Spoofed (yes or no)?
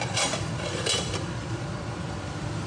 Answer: yes